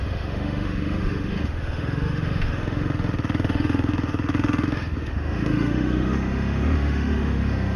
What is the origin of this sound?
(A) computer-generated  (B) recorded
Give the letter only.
A